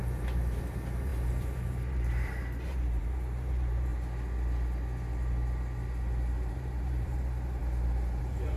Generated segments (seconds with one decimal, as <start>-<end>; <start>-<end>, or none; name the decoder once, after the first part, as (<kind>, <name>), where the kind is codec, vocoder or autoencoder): 0.0-3.9 (vocoder, BigVGAN v2); 6.5-7.6; 8.2-8.6